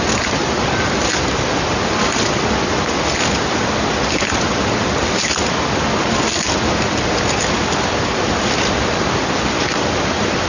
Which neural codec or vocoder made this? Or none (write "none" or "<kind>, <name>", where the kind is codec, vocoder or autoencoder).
none